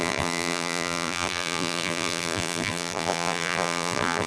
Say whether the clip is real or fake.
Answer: fake